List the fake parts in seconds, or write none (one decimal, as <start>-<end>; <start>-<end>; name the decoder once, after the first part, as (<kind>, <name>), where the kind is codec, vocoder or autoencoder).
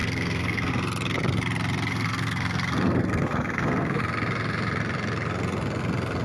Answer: 0.0-0.7 (codec, SNAC); 1.9-4.0